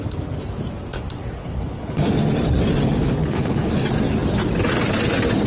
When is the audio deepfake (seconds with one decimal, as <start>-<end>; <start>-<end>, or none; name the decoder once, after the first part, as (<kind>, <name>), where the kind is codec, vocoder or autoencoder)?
1.4-2.1 (codec, HILCodec); 3.2-3.7